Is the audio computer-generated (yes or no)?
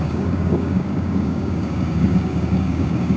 yes